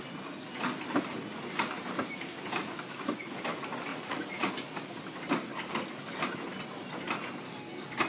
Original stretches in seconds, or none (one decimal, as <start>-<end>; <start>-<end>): 0.0-3.9; 4.5-8.1